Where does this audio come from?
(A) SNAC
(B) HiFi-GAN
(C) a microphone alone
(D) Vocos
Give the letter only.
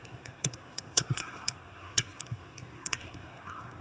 A